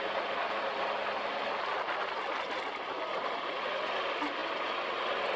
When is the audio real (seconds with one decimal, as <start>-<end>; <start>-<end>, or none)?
0.0-5.4

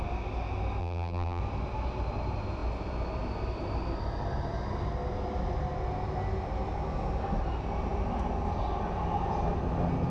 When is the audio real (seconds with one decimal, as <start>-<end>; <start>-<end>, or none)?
0.0-0.8; 1.4-10.1